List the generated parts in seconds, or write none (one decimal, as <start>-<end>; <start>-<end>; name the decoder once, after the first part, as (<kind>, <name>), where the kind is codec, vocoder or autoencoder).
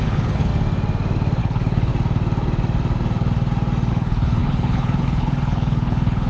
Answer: 0.0-0.5 (codec, HILCodec); 1.4-1.9; 3.9-6.3